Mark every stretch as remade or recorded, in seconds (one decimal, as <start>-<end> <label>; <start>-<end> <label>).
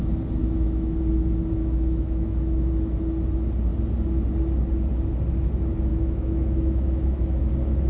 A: 0.0-0.4 recorded; 0.4-1.0 remade; 1.0-1.6 recorded; 1.6-2.7 remade; 2.7-5.9 recorded; 5.9-7.5 remade; 7.5-7.9 recorded